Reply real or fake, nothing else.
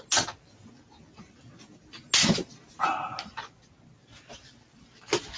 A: real